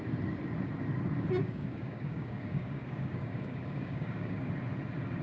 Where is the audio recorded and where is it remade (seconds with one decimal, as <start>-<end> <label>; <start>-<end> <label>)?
0.0-1.4 recorded; 1.4-4.5 remade; 4.5-5.2 recorded